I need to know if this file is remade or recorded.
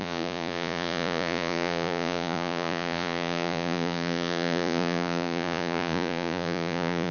remade